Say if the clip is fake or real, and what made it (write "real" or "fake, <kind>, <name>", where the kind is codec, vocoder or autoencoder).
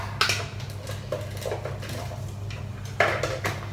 real